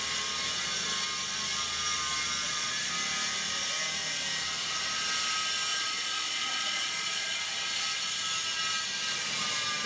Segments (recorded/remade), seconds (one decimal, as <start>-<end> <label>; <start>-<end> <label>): 0.0-2.4 recorded; 2.4-2.9 remade; 2.9-5.7 recorded; 5.7-7.4 remade; 7.4-9.9 recorded